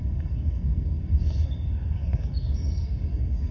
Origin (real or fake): fake